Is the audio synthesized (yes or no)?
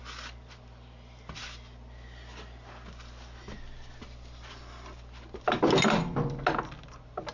no